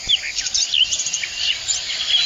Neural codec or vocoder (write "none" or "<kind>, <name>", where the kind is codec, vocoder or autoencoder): none